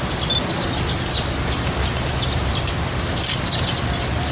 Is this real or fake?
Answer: real